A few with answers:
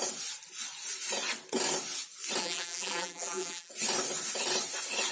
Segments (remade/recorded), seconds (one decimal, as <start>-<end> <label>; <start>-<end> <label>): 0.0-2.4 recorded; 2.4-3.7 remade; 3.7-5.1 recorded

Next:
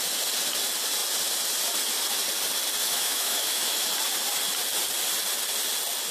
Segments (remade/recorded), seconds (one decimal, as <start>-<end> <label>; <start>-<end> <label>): 0.0-2.8 recorded; 2.8-3.9 remade; 3.9-6.1 recorded

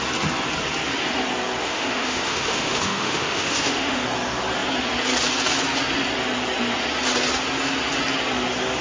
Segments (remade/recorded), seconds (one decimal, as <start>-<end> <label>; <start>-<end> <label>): 0.0-1.6 recorded; 1.6-4.0 remade; 4.0-8.8 recorded

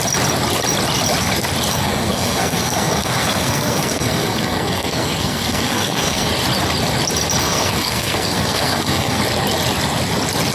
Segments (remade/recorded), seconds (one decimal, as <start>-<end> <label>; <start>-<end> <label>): 0.0-1.7 recorded; 1.7-6.3 remade; 6.3-7.4 recorded; 7.4-9.2 remade; 9.2-10.5 recorded